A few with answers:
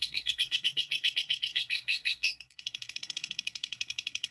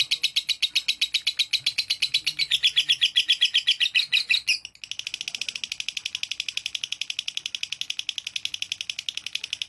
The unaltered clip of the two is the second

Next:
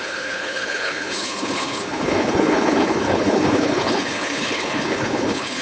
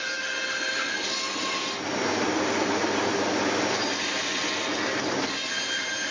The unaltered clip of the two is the second